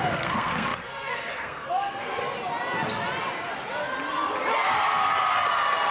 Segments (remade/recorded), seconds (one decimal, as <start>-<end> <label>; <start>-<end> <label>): 0.0-2.2 remade; 2.2-5.9 recorded